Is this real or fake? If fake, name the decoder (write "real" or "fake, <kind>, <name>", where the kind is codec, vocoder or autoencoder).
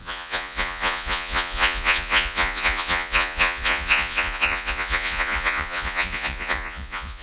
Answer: fake, vocoder, Vocos